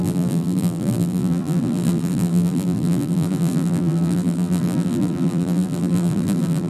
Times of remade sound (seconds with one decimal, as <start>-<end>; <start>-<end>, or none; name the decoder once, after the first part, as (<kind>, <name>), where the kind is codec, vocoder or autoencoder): 0.0-6.7 (vocoder, BigVGAN v2)